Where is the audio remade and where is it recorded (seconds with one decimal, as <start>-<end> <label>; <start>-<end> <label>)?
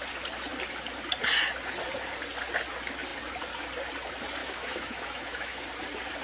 0.0-4.4 recorded; 4.4-5.6 remade; 5.6-6.2 recorded